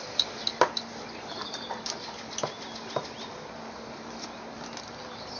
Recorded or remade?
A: recorded